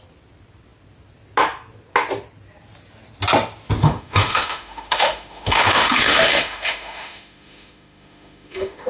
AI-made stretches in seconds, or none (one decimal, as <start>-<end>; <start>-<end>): 3.8-8.9